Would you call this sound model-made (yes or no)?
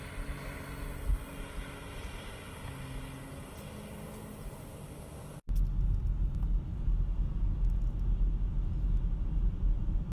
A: no